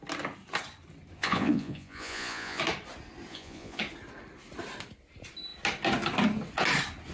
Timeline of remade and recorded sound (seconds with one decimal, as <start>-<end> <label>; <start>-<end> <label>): 0.0-1.2 recorded; 1.2-2.6 remade; 2.6-3.3 recorded; 3.3-3.8 remade; 3.8-7.1 recorded